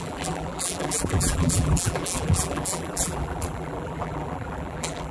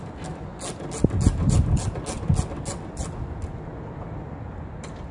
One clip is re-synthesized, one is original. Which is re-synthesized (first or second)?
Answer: first